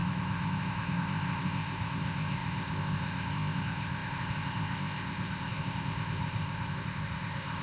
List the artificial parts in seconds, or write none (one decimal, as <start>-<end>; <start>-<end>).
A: 0.0-7.6